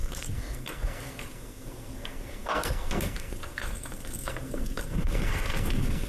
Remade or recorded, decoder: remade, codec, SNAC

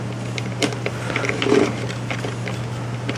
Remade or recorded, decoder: recorded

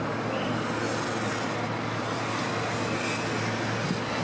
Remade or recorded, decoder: recorded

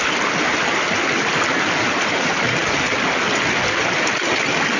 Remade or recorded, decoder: recorded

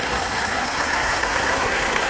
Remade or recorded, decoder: remade, codec, SNAC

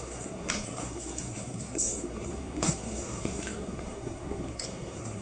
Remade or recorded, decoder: remade, codec, SNAC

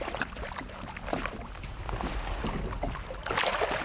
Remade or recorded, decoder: recorded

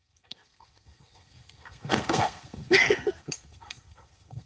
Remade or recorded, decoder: remade, codec, SNAC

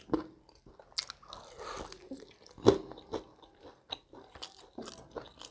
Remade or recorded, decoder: recorded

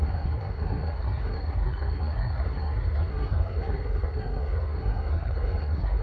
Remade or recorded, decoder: remade, codec, SNAC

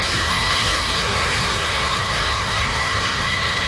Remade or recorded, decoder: remade, codec, SNAC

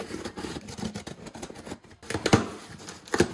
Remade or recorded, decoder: recorded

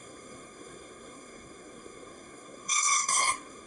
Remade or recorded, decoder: remade, codec, SNAC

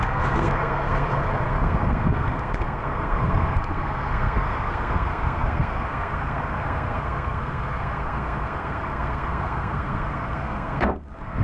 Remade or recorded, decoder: remade, codec, SNAC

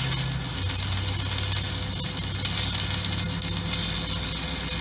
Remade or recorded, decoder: recorded